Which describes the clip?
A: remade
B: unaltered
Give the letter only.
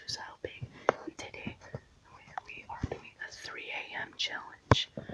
B